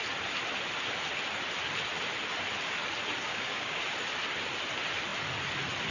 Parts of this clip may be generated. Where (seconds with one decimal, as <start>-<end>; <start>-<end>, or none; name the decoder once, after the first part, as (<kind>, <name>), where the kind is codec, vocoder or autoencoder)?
3.3-3.8 (codec, DAC)